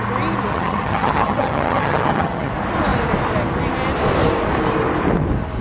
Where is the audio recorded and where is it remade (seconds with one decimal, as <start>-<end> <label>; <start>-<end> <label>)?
0.0-0.5 recorded; 0.5-2.5 remade; 2.5-5.6 recorded